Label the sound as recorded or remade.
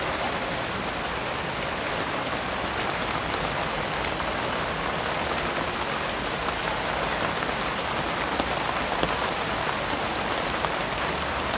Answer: recorded